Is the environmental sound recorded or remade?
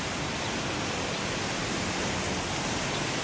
recorded